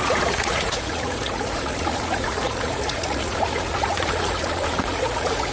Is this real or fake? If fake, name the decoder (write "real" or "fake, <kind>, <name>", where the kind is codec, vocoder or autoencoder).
fake, vocoder, Vocos